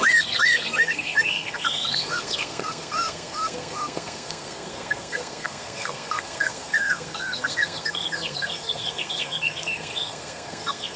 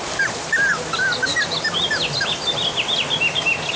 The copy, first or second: first